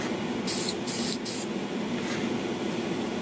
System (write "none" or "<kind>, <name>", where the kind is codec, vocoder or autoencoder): none